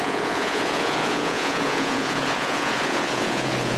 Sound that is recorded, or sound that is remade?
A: remade